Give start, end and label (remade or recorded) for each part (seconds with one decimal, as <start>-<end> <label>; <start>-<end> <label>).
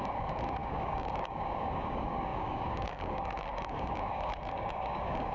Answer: 0.0-5.3 remade